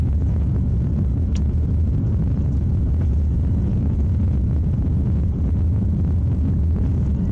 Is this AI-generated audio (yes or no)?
yes